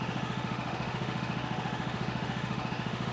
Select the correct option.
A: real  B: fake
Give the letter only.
B